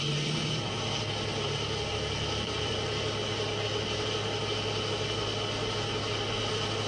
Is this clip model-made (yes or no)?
no